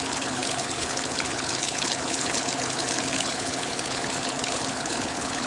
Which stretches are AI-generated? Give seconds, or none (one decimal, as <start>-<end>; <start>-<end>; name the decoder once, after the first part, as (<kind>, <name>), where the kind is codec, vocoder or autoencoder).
0.0-5.5 (codec, HILCodec)